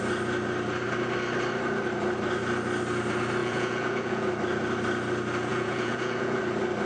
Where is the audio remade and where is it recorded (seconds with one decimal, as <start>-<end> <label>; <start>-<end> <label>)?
0.0-3.4 recorded; 3.4-4.3 remade; 4.3-5.5 recorded; 5.5-6.4 remade; 6.4-6.9 recorded